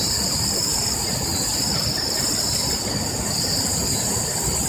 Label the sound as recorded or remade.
recorded